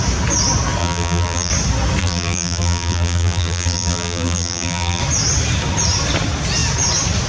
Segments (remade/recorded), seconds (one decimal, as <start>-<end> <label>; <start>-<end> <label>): 0.0-0.8 recorded; 0.8-1.5 remade; 1.5-2.0 recorded; 2.0-5.0 remade; 5.0-7.3 recorded